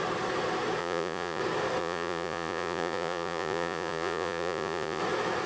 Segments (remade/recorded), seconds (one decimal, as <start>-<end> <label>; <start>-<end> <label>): 0.0-0.8 recorded; 0.8-1.4 remade; 1.4-1.8 recorded; 1.8-5.0 remade; 5.0-5.5 recorded